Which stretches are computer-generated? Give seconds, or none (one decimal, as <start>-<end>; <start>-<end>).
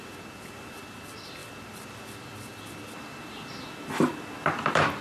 none